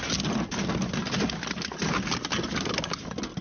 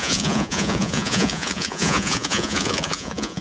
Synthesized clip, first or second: second